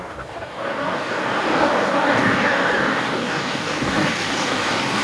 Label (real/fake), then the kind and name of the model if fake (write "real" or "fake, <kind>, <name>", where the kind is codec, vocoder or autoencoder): fake, codec, DAC